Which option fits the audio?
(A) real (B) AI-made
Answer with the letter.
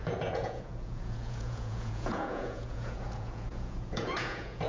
B